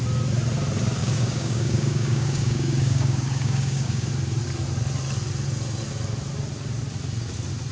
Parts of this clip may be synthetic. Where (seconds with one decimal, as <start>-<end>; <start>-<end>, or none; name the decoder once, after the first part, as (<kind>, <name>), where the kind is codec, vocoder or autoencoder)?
1.0-4.1 (codec, DAC)